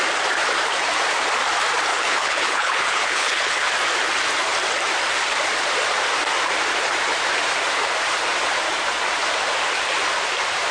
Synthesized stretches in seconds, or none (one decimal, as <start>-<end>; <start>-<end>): 1.9-3.7